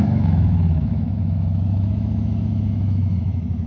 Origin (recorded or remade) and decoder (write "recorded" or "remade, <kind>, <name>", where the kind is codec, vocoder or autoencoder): remade, autoencoder, DAC-VAE